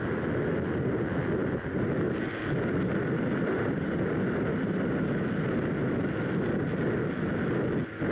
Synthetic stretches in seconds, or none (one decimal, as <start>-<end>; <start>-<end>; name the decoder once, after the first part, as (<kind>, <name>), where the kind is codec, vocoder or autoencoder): 1.4-4.0 (vocoder, BigVGAN v2)